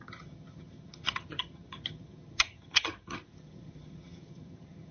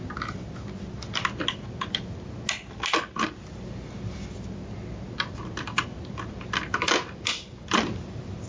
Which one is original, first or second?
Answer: second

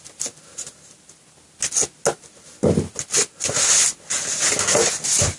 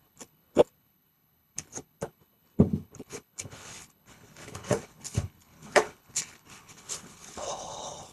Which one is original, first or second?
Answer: first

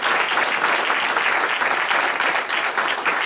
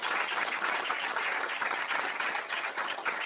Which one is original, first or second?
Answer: first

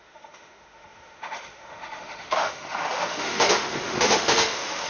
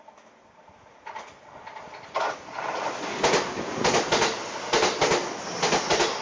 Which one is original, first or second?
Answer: second